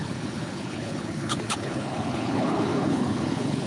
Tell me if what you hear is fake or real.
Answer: fake